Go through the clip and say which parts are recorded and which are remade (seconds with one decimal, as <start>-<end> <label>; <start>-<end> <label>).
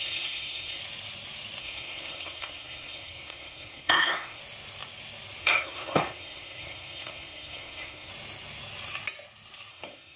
0.0-0.8 remade; 0.8-1.6 recorded; 1.6-4.4 remade; 4.4-5.4 recorded; 5.4-8.1 remade; 8.1-9.7 recorded; 9.7-10.2 remade